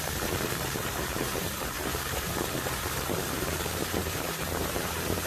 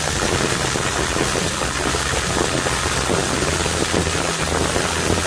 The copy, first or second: first